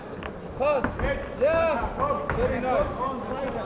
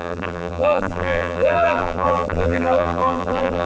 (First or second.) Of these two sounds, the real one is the first